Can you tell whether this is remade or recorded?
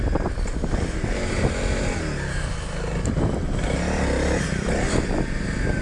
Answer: recorded